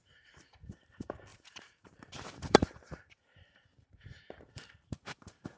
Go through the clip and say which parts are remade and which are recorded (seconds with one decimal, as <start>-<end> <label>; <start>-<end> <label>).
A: 0.0-5.6 remade